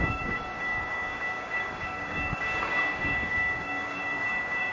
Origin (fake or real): fake